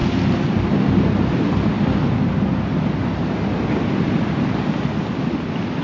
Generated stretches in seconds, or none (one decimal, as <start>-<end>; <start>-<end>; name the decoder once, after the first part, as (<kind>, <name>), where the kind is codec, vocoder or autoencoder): none